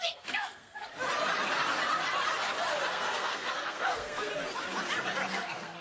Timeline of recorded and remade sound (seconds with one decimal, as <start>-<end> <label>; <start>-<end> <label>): 0.0-0.9 remade; 0.9-2.9 recorded; 2.9-4.3 remade; 4.3-5.3 recorded; 5.3-5.8 remade